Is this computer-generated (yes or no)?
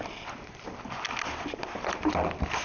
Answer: no